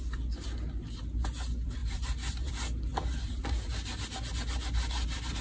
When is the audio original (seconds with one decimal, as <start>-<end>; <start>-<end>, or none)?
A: 0.0-1.8; 2.5-2.9; 3.9-5.4